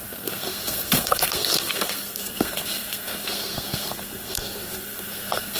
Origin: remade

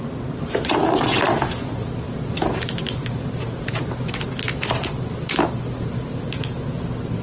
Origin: recorded